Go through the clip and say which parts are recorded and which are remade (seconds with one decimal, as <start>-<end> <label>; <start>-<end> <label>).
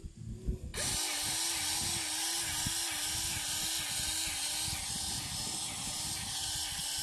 0.0-7.0 recorded